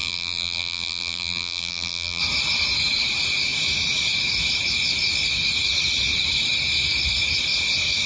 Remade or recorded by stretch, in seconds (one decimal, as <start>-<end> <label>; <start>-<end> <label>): 0.0-2.2 remade; 2.2-8.1 recorded